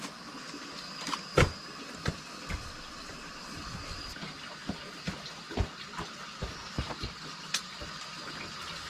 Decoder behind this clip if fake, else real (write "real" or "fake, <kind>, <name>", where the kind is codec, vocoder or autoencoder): real